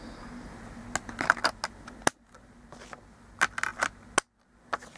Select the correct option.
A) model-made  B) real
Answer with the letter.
B